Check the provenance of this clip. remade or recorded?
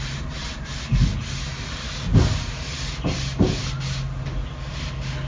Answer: recorded